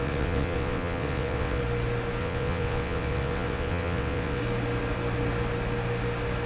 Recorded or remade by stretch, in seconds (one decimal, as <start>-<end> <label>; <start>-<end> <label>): 0.0-1.6 remade; 1.6-2.2 recorded; 2.2-4.4 remade; 4.4-6.5 recorded